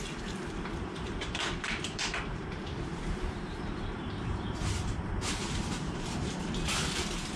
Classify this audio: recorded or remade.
remade